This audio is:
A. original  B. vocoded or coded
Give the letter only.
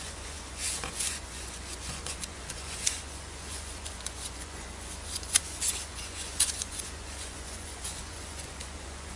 B